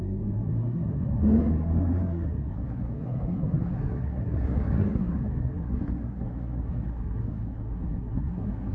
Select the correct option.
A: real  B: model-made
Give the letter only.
B